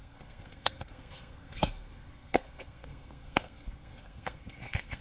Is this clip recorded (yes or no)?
no